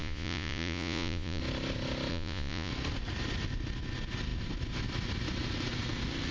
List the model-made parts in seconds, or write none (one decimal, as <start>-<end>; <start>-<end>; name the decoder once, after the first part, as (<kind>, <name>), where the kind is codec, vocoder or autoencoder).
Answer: 0.0-1.4 (vocoder, Vocos); 2.1-2.7

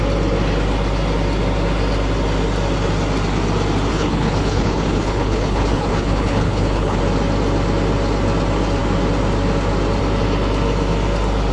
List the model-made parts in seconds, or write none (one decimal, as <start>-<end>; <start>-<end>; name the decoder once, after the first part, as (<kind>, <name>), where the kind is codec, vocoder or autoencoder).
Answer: 3.9-7.0 (codec, HILCodec)